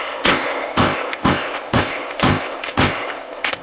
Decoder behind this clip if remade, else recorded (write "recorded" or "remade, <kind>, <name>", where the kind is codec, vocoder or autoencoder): remade, codec, ZipCodec